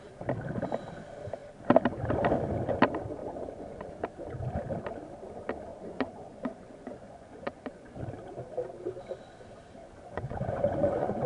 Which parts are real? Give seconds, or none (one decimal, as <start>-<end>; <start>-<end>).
0.0-3.2; 3.9-5.7; 8.0-9.8